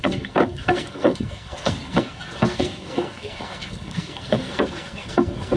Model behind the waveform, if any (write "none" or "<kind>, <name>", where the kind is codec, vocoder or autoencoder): codec, SNAC